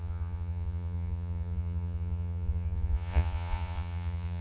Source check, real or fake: fake